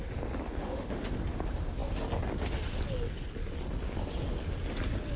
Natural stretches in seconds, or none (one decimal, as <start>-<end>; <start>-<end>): 0.0-0.6; 1.1-5.2